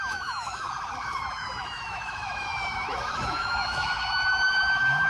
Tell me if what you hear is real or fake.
fake